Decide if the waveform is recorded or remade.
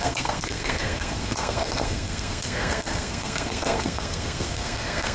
remade